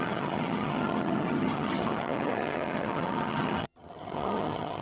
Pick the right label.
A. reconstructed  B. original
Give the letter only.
A